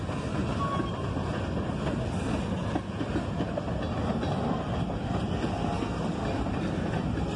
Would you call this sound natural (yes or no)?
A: yes